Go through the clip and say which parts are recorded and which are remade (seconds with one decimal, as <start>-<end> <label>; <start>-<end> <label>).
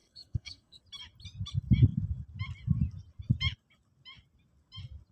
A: 0.0-0.8 remade; 0.8-5.1 recorded